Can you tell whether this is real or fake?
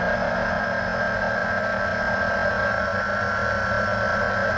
real